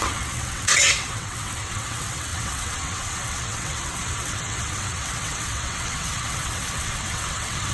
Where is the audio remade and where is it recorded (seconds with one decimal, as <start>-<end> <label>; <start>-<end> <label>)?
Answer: 0.0-7.7 remade